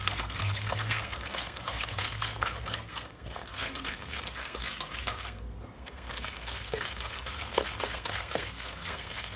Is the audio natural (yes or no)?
no